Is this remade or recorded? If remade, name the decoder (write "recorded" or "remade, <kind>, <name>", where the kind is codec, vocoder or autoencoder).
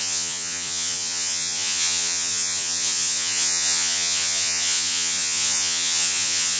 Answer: remade, vocoder, Vocos